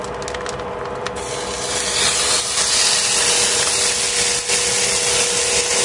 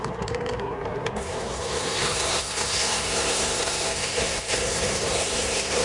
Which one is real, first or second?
first